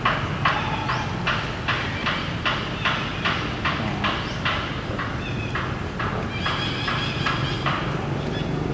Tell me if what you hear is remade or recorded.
recorded